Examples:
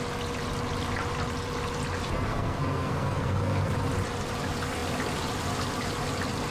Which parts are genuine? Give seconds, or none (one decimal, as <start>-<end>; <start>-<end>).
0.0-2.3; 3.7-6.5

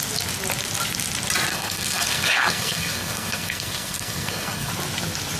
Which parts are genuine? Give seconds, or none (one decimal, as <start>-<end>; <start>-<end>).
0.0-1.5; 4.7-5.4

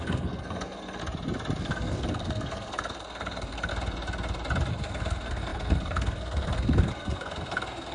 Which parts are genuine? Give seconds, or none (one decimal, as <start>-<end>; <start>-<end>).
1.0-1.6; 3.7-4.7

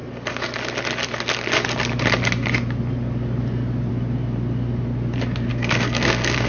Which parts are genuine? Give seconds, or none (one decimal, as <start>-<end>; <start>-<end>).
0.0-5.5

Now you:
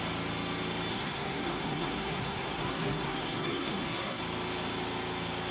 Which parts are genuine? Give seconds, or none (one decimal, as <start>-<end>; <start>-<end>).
0.0-0.9; 4.2-5.5

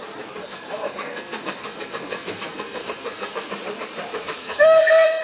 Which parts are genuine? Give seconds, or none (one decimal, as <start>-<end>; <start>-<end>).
0.0-0.4; 3.5-4.4